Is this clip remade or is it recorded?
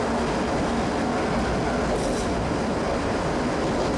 recorded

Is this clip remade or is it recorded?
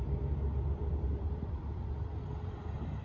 remade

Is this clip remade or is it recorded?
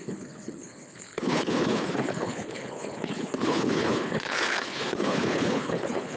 remade